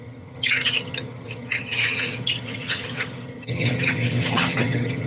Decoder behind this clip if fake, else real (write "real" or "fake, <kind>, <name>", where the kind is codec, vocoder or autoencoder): fake, vocoder, HiFi-GAN